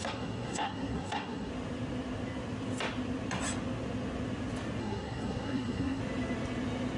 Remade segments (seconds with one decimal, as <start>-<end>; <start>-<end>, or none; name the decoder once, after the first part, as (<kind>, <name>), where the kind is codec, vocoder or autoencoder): 0.0-1.5 (codec, SNAC); 4.8-6.0